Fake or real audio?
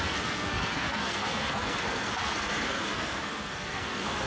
fake